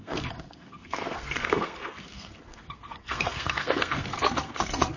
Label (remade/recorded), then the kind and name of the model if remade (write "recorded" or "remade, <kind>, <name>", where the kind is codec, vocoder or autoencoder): remade, codec, SNAC